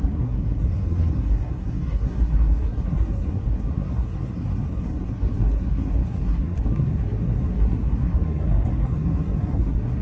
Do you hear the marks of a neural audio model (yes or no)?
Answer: yes